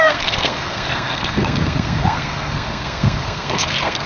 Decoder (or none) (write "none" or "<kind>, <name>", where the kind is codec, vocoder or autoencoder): codec, SNAC